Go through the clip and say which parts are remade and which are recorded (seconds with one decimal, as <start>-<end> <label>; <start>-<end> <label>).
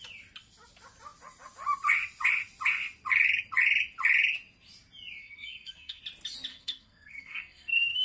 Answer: 0.0-5.2 recorded; 5.2-6.0 remade; 6.0-6.5 recorded; 6.5-8.0 remade